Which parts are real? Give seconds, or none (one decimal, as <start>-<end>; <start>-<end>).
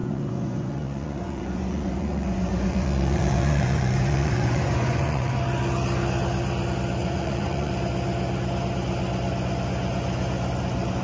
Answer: 5.3-7.0; 7.7-11.0